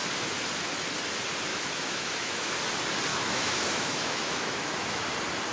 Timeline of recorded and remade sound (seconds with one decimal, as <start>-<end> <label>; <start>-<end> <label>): 0.0-1.5 recorded; 1.5-2.5 remade; 2.5-3.1 recorded; 3.1-5.1 remade; 5.1-5.5 recorded